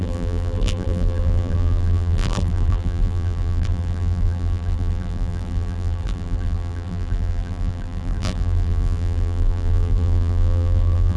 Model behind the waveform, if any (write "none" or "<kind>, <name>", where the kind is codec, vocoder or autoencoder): vocoder, BigVGAN v2